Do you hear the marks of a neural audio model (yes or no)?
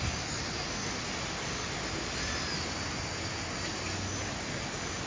no